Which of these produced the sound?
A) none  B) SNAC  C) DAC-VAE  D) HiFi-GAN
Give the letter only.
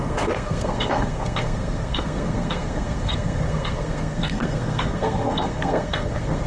B